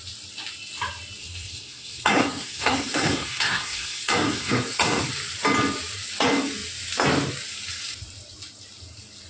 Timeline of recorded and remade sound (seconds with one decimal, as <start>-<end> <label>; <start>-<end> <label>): 0.0-1.2 recorded; 1.2-5.0 remade; 5.0-9.3 recorded